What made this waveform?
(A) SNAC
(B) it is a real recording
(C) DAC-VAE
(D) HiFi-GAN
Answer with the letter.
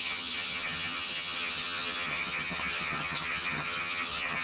D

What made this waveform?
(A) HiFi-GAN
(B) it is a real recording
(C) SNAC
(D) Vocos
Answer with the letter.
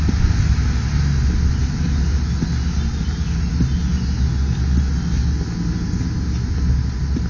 B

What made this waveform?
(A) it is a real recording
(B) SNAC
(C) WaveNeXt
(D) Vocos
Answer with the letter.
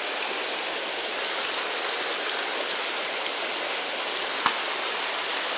A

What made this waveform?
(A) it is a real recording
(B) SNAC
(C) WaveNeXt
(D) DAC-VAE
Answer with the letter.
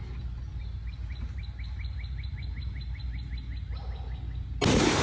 A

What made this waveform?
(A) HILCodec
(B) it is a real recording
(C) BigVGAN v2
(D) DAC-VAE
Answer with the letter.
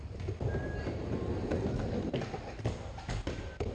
B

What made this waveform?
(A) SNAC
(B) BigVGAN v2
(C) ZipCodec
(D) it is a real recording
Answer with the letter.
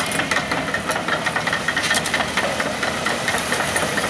B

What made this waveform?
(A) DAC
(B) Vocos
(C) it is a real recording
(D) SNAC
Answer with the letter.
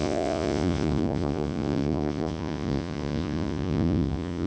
B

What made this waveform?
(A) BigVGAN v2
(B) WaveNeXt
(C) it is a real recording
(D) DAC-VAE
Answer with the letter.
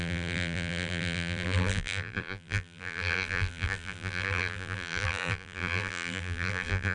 A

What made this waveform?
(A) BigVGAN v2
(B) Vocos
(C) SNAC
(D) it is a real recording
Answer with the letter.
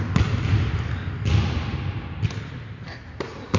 D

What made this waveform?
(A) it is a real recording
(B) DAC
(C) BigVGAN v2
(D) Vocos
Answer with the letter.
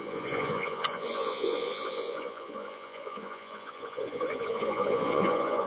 D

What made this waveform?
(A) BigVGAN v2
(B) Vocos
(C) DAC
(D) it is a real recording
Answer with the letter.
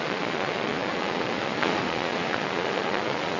B